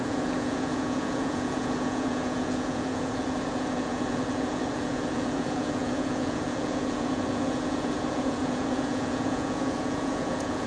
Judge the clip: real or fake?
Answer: fake